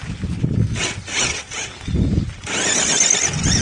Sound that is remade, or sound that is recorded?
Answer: recorded